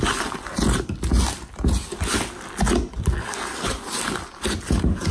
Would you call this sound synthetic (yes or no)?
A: no